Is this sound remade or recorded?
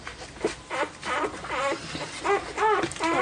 remade